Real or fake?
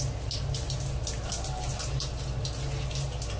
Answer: real